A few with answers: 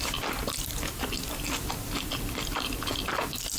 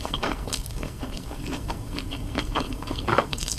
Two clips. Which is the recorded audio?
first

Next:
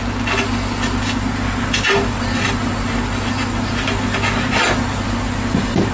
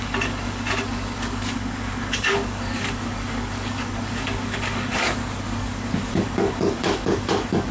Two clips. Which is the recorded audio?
first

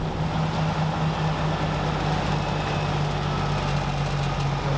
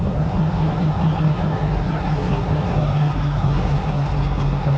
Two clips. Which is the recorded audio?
first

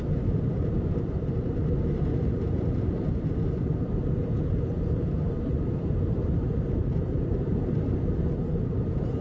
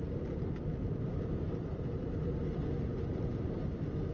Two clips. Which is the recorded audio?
second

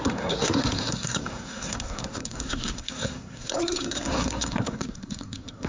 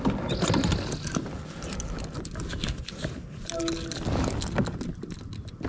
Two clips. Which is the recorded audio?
second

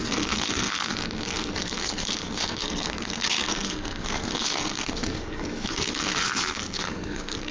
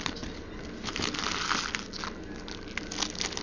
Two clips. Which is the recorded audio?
second